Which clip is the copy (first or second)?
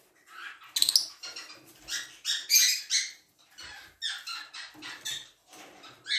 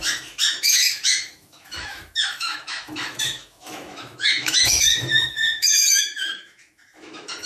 second